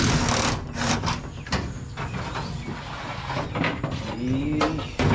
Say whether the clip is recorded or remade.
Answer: recorded